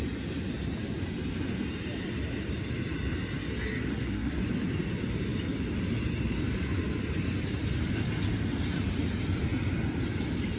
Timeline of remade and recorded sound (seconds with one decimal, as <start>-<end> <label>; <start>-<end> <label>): 0.0-3.9 recorded; 3.9-4.4 remade; 4.4-10.6 recorded